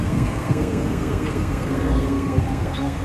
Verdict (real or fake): fake